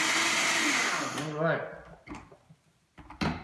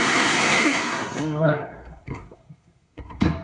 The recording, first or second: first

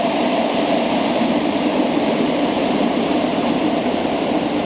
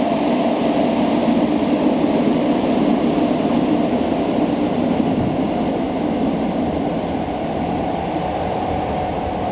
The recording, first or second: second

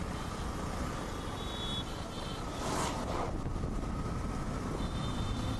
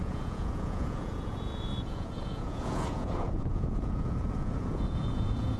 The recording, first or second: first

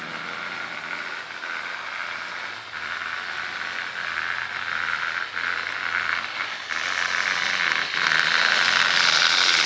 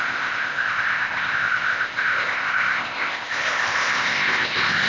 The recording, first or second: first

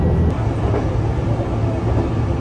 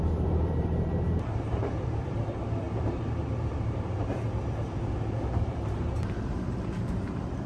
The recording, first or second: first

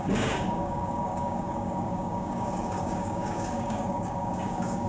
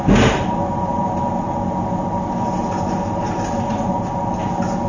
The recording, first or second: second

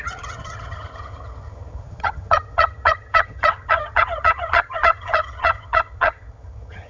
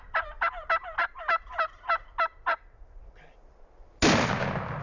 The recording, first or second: second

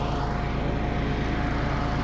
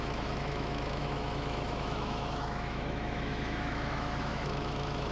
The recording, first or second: first